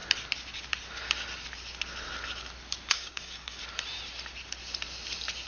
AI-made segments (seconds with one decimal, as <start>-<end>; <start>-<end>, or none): 2.9-3.6